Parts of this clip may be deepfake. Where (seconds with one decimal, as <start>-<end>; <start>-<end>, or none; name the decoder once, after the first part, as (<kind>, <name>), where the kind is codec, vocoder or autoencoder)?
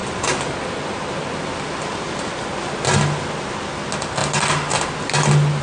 none